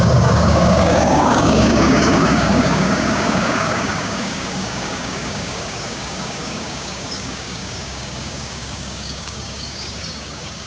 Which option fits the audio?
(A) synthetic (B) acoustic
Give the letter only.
A